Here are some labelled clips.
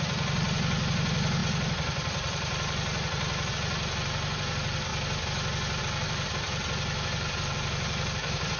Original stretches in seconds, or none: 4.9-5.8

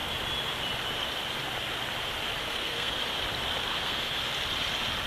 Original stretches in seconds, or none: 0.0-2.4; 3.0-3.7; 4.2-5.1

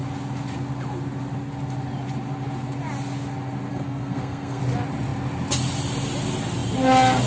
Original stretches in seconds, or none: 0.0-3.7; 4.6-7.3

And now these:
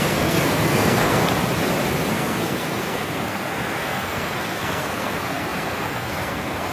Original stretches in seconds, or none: 1.2-2.1

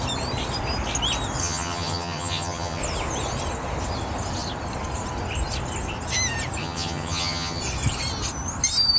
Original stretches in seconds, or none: 0.0-1.4; 2.8-6.6; 7.6-9.0

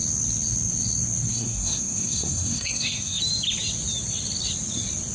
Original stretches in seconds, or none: 0.0-1.3; 3.2-5.1